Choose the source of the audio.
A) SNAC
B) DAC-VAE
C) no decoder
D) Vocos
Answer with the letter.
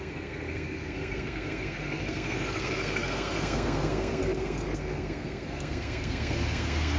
A